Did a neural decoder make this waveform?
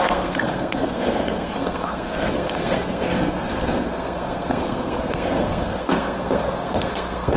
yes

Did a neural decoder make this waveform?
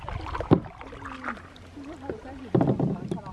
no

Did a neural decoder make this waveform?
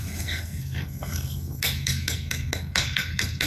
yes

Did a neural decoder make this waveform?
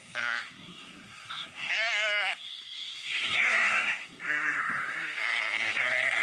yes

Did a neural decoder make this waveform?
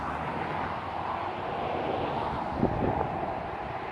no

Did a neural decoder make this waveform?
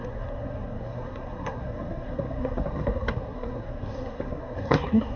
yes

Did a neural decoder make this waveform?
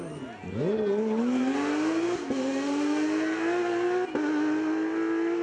no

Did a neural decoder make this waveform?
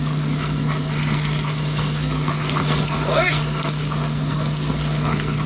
yes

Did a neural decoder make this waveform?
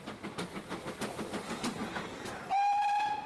no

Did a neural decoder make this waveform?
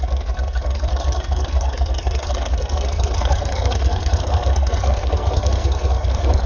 yes